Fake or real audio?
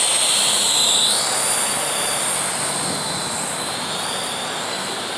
real